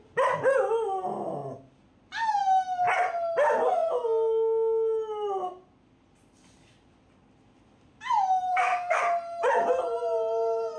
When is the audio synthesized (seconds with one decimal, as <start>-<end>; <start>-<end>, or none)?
8.5-9.0